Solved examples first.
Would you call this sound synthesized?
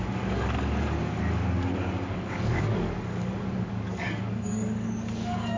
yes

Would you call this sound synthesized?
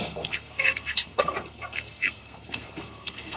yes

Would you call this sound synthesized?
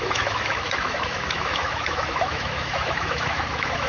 yes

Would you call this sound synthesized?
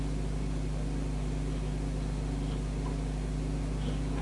no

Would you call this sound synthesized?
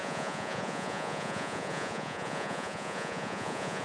yes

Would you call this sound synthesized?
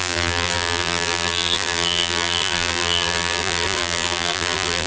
yes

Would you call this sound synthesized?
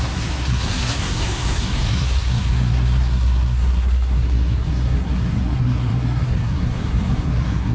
yes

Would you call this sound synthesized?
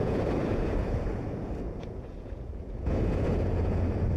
yes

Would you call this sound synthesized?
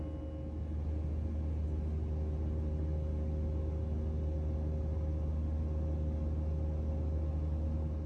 no